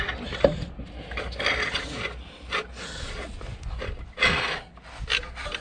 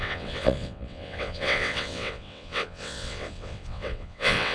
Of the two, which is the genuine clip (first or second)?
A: first